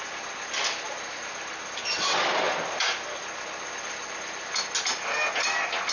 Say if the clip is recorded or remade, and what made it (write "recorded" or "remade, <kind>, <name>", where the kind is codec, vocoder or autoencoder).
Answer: recorded